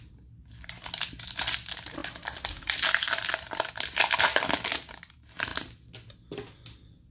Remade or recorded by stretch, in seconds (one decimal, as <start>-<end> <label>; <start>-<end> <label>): 0.0-7.1 recorded